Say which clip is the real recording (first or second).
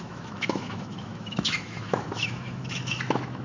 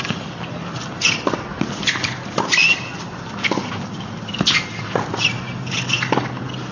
second